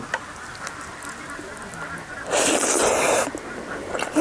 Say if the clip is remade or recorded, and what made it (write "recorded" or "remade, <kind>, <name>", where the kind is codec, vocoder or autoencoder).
recorded